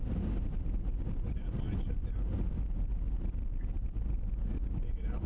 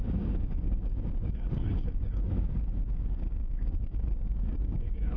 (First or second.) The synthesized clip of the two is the second